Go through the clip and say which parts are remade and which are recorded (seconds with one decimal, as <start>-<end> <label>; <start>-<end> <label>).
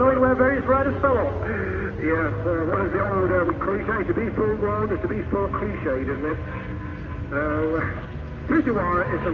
0.0-0.6 recorded; 0.6-1.3 remade; 1.3-2.6 recorded; 2.6-3.5 remade; 3.5-9.3 recorded